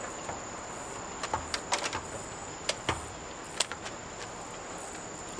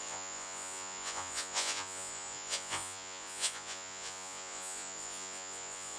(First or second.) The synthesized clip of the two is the second